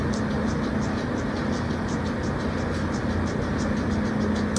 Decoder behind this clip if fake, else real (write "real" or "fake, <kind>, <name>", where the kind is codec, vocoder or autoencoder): real